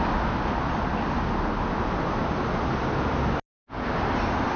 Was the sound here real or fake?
real